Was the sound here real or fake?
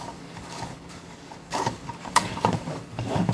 fake